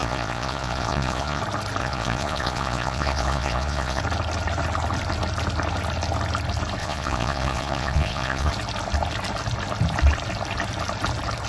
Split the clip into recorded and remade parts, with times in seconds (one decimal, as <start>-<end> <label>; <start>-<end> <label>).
0.0-1.4 remade; 1.4-1.8 recorded; 1.8-4.0 remade; 4.0-6.8 recorded; 6.8-8.5 remade; 8.5-11.5 recorded